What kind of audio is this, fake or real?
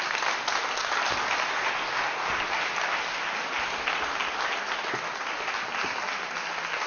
real